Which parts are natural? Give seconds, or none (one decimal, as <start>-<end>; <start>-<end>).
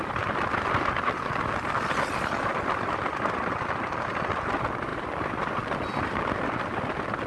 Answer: 0.0-2.5; 3.5-4.9; 5.5-7.3